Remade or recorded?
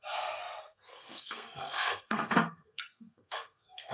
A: remade